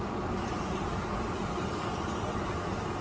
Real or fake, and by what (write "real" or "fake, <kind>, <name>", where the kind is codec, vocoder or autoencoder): real